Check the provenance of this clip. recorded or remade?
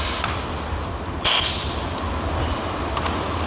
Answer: recorded